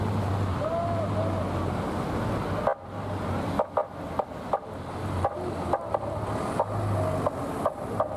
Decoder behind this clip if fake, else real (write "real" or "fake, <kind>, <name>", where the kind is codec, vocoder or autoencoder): real